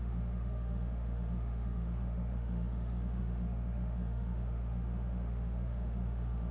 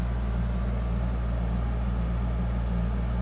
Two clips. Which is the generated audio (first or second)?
first